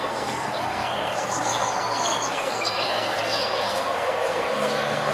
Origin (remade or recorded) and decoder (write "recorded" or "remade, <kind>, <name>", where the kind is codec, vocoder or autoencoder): remade, codec, SNAC